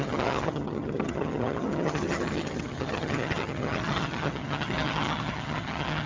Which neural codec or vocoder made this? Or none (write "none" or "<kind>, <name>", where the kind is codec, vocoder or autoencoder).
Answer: vocoder, HiFi-GAN